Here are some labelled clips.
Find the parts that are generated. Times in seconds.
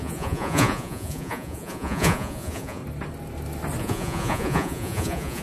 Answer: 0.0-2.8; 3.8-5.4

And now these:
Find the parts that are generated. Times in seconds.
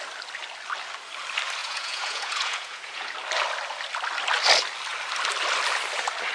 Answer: 1.6-3.1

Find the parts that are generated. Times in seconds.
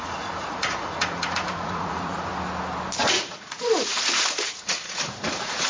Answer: 0.0-2.3; 3.1-5.7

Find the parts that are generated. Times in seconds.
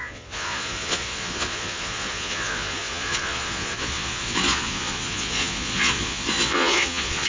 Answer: 0.0-7.3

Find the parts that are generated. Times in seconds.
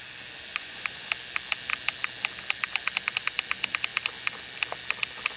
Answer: 0.5-1.1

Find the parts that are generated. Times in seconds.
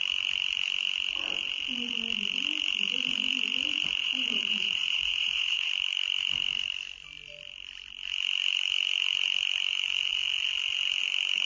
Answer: 4.0-5.7